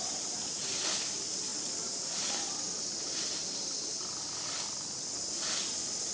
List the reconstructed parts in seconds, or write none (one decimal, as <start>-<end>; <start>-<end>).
none